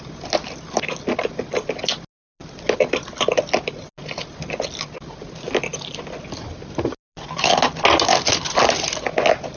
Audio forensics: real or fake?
real